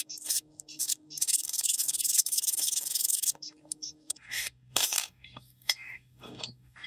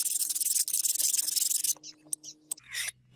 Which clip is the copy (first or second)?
first